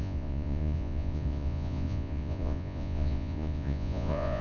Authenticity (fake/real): fake